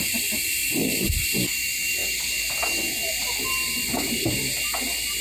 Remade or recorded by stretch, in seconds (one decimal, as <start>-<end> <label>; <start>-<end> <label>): 0.0-2.0 remade; 2.0-3.1 recorded; 3.1-4.4 remade; 4.4-5.2 recorded